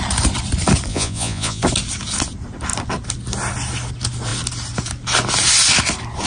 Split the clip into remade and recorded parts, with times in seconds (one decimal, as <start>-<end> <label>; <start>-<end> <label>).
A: 0.0-0.9 recorded; 0.9-1.6 remade; 1.6-6.3 recorded

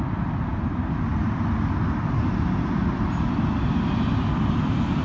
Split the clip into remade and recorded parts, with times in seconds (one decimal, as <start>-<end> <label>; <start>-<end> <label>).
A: 0.0-5.0 recorded

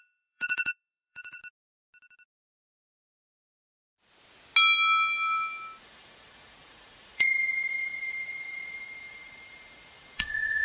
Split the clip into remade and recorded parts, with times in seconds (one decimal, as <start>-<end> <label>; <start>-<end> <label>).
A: 0.0-1.4 remade; 1.4-5.8 recorded; 5.8-10.6 remade

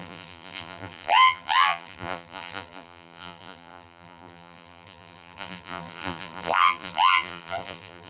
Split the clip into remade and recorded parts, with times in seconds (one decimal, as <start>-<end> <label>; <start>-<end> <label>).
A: 0.0-8.1 remade

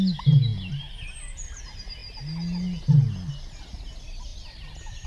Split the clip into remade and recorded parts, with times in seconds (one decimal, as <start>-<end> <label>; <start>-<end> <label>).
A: 0.0-0.5 recorded; 0.5-1.6 remade; 1.6-4.3 recorded; 4.3-5.1 remade

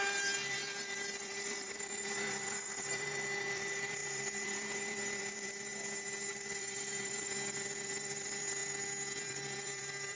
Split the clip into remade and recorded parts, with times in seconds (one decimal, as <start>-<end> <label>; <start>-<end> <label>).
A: 0.0-5.7 remade; 5.7-6.3 recorded; 6.3-8.6 remade; 8.6-9.2 recorded; 9.2-10.2 remade

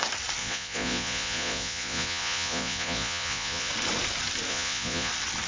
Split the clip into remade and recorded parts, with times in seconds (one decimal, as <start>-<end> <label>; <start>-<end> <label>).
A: 0.0-0.4 recorded; 0.4-3.7 remade; 3.7-4.5 recorded; 4.5-5.1 remade; 5.1-5.5 recorded